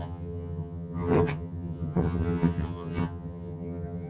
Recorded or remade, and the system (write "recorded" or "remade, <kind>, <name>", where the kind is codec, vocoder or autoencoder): remade, vocoder, HiFi-GAN